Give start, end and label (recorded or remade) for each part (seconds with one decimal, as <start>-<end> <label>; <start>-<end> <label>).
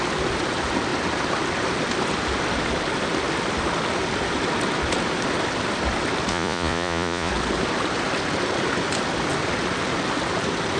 0.0-6.3 recorded; 6.3-7.3 remade; 7.3-10.8 recorded